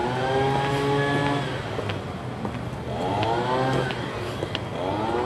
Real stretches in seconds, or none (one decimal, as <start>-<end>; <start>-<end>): 0.0-5.3